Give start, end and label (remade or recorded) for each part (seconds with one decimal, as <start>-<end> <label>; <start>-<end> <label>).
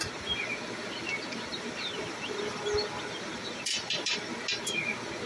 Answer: 0.0-1.5 recorded; 1.5-4.4 remade; 4.4-5.3 recorded